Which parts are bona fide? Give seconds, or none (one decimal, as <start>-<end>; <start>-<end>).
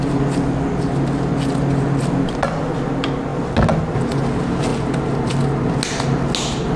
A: 0.0-6.8